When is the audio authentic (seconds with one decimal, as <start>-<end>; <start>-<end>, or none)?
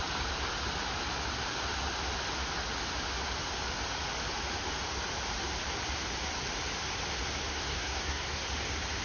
0.0-7.5; 8.5-9.0